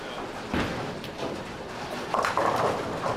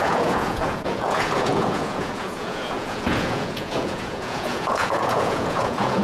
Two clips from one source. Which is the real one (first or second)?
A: first